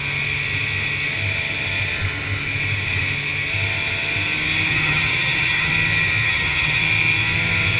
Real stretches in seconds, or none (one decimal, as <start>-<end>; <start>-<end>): 0.0-4.7; 5.7-6.2; 6.8-7.8